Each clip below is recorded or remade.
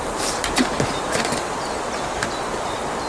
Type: recorded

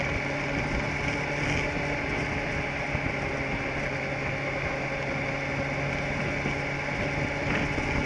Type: recorded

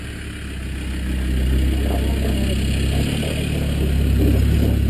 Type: recorded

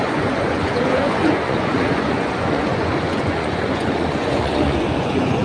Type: remade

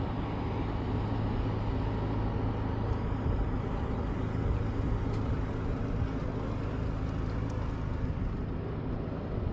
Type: recorded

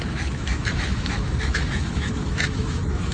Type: remade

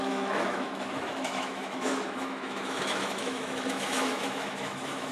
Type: remade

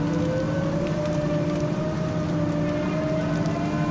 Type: recorded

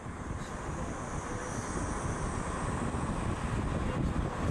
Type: recorded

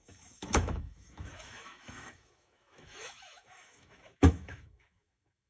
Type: remade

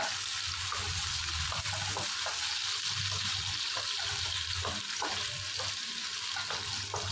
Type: recorded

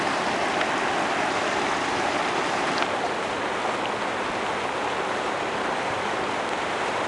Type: recorded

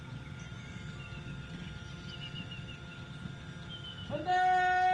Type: recorded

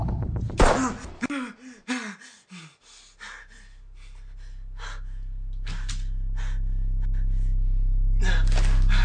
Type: recorded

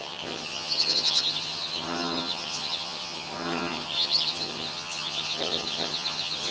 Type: remade